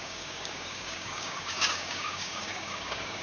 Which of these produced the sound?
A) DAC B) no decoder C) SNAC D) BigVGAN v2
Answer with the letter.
A